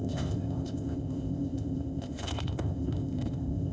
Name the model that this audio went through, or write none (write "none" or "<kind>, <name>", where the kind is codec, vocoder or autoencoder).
codec, ZipCodec